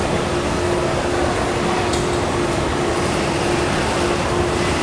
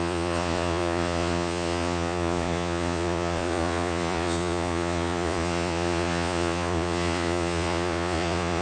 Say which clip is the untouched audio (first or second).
first